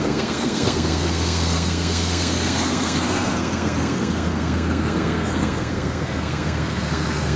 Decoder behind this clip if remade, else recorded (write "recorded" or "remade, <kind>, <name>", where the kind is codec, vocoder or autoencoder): remade, codec, SNAC